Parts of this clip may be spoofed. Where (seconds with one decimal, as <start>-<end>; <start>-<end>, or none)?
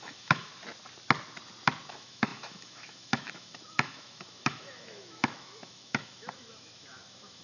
0.0-0.5; 1.9-7.4